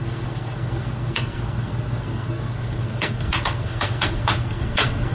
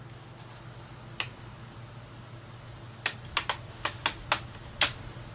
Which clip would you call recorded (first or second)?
second